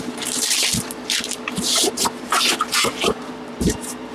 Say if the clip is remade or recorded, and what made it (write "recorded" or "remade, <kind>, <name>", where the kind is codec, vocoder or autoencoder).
remade, vocoder, BigVGAN v2